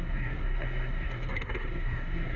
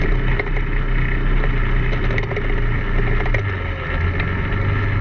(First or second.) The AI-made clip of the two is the first